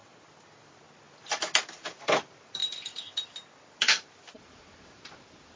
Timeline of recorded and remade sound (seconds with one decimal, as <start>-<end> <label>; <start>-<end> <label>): 0.0-2.2 recorded; 2.2-2.6 remade; 2.6-3.8 recorded; 3.8-5.6 remade